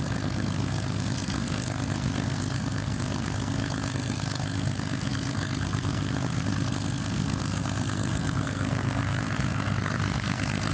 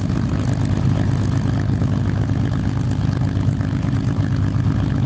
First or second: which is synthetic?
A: first